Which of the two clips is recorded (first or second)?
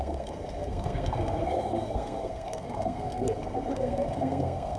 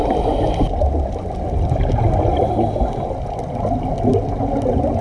second